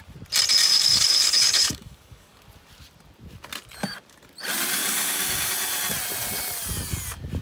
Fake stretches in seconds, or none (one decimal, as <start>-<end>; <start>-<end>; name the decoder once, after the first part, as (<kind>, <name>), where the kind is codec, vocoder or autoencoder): 0.6-2.4 (codec, DAC); 4.8-5.5